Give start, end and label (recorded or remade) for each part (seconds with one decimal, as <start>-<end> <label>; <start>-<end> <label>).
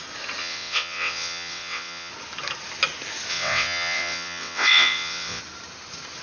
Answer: 0.0-0.4 recorded; 0.4-2.1 remade; 2.1-3.3 recorded; 3.3-5.4 remade; 5.4-6.2 recorded